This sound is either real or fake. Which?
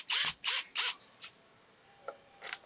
fake